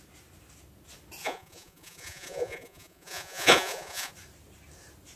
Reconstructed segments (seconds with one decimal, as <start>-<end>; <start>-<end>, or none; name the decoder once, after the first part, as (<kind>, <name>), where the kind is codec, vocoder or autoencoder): 1.2-4.1 (vocoder, Vocos)